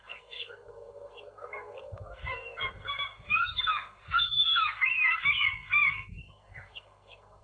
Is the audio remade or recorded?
remade